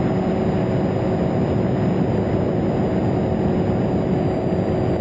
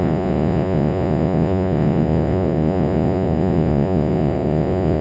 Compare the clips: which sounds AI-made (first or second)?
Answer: second